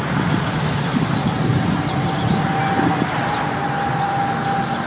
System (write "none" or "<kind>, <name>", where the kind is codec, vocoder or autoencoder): none